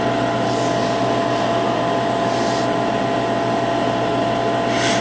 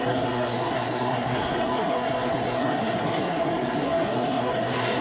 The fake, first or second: second